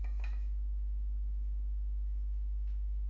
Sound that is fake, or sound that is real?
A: fake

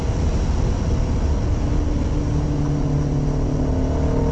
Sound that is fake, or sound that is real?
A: real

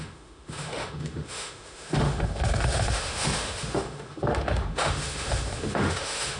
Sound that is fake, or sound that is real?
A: fake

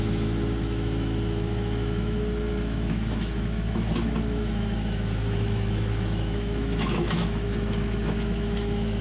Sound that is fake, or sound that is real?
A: fake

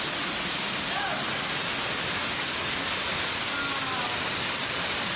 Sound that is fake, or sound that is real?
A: real